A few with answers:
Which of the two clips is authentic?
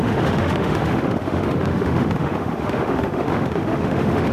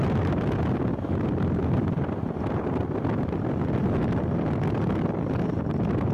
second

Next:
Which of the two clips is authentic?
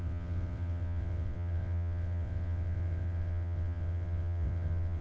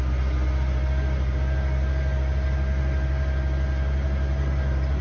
second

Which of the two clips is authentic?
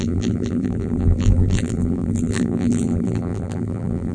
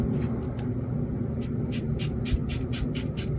second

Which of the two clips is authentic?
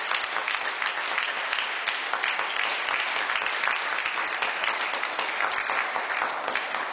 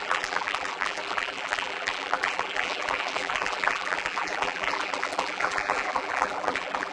first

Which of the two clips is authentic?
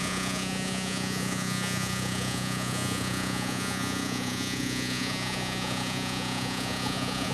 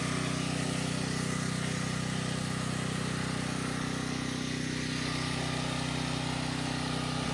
second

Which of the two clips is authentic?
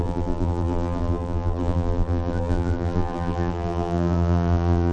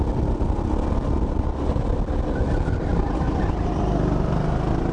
second